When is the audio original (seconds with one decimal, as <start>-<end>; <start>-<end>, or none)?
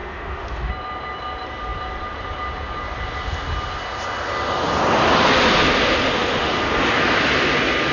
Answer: 0.7-6.0; 6.5-7.9